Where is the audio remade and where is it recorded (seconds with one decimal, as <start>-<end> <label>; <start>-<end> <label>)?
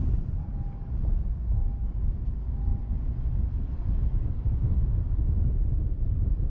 0.0-6.5 recorded